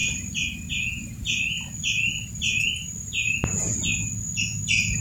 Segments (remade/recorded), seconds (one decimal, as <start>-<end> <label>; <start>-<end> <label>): 0.0-0.7 remade; 0.7-5.0 recorded